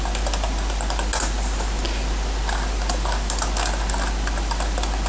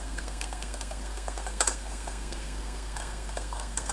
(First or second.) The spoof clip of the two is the second